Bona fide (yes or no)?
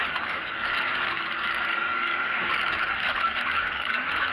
no